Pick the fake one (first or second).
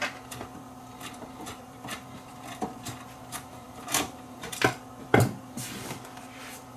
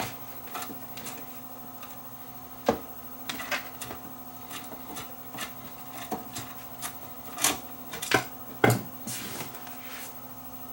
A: first